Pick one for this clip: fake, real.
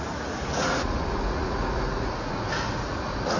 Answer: fake